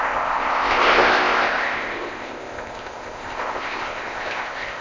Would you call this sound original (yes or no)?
no